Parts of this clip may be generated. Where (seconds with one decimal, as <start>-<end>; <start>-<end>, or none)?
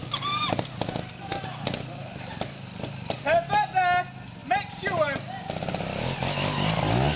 none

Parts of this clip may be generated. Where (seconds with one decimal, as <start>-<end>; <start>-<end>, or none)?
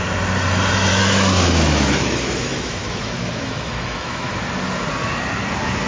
0.9-4.4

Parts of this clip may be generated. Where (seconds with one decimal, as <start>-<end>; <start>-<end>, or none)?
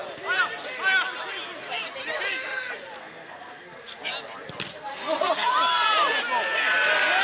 3.0-4.0; 4.7-5.5